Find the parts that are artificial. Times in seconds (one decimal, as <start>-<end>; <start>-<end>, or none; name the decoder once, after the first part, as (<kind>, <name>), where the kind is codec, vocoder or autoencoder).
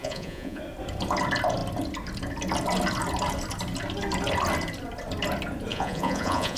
0.0-0.6 (vocoder, Vocos); 5.7-6.6